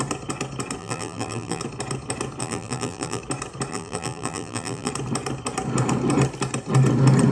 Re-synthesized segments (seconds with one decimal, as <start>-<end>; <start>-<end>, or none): 0.8-1.6; 2.4-3.2; 3.7-4.9